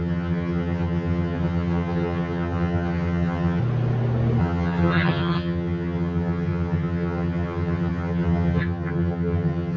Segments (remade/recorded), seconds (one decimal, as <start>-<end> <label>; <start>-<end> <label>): 0.0-3.6 remade; 3.6-4.4 recorded; 4.4-9.8 remade